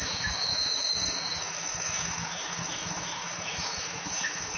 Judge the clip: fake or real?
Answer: fake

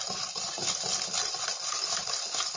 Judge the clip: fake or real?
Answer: real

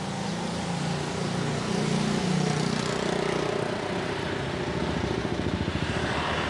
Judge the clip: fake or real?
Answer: real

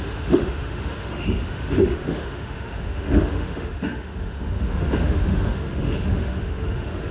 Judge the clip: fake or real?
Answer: fake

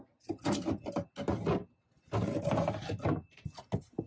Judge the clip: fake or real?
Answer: real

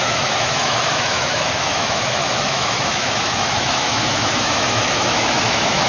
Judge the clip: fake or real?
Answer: fake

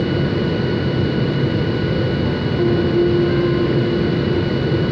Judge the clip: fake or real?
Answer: real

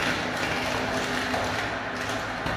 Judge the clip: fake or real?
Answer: real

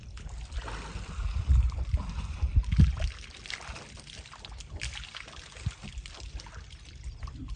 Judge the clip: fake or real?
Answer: real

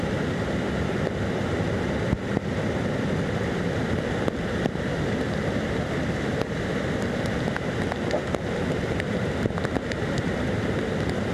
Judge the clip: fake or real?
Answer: real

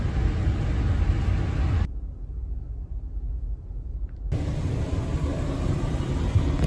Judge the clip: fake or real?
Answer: real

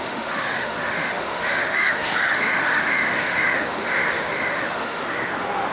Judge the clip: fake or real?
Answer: fake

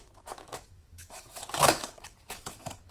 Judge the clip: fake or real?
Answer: fake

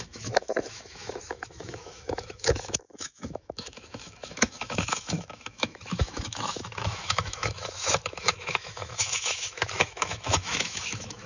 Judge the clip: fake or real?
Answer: fake